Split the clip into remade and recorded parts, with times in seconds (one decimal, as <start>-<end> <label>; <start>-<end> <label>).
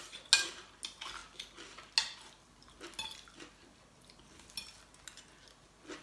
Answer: 0.0-6.0 recorded